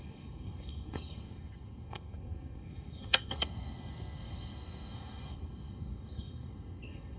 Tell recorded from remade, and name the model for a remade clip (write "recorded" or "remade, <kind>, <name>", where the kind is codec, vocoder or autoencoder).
remade, codec, SNAC